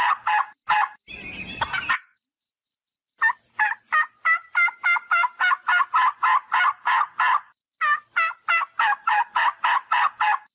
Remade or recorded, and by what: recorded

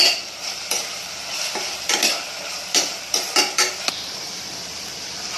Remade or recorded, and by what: remade, vocoder, BigVGAN v2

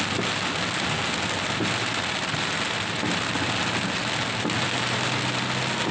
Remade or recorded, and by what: recorded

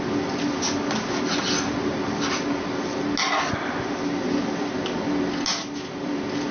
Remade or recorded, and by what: recorded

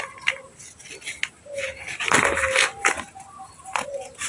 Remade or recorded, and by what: recorded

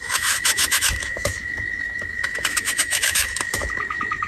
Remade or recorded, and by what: remade, autoencoder, DAC-VAE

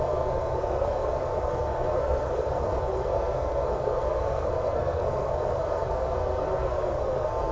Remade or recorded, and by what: remade, codec, SNAC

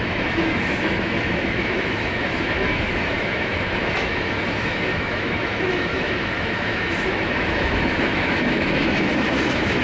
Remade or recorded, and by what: remade, autoencoder, DAC-VAE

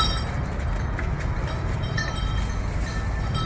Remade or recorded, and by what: recorded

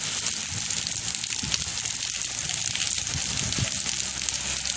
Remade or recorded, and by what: recorded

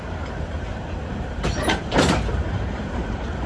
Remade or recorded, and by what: remade, vocoder, BigVGAN v2